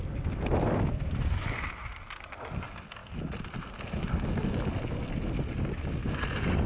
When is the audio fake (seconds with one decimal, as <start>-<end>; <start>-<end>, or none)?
none